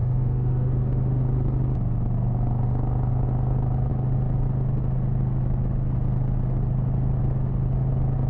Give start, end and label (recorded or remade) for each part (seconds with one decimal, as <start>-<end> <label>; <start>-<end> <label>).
0.0-1.2 remade; 1.2-8.3 recorded